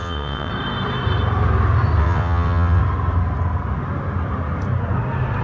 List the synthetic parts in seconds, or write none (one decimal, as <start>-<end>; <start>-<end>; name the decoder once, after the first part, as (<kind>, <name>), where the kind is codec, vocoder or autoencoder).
0.0-0.5 (vocoder, WaveNeXt); 2.0-2.8

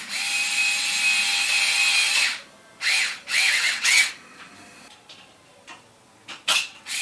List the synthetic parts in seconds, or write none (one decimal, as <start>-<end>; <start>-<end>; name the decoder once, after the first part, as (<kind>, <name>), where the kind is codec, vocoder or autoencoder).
3.3-4.1 (vocoder, WaveNeXt); 6.5-7.0